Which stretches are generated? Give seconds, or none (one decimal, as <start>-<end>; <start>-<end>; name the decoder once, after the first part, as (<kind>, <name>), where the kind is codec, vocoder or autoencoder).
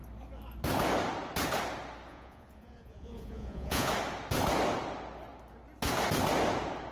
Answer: 2.1-3.9 (vocoder, Vocos)